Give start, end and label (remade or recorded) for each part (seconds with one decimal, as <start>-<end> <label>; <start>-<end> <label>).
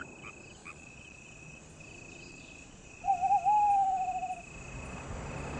0.0-0.6 recorded; 0.6-1.6 remade; 1.6-2.3 recorded; 2.3-3.1 remade; 3.1-5.6 recorded